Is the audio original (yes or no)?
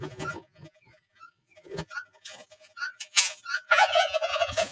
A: no